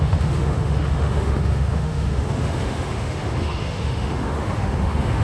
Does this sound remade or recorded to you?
remade